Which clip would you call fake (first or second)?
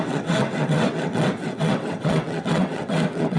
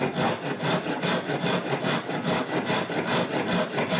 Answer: first